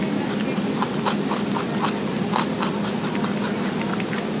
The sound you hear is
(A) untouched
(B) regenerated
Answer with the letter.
A